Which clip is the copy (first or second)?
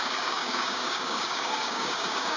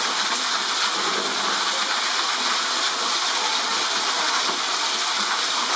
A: first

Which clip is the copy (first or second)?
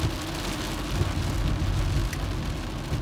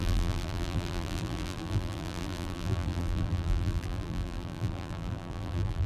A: second